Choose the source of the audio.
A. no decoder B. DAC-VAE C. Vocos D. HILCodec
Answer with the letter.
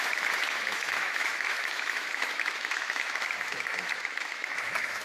B